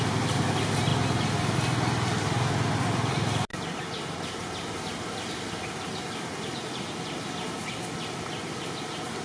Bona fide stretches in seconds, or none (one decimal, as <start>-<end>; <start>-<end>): 0.0-9.2